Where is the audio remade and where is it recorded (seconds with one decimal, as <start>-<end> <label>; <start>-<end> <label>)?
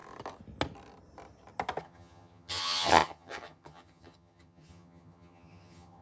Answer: 0.0-1.8 recorded; 1.8-6.0 remade